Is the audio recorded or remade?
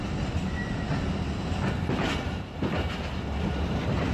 recorded